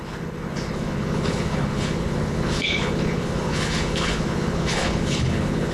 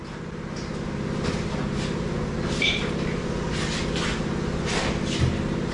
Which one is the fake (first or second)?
first